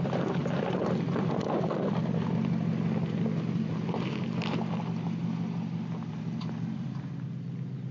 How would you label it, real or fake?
real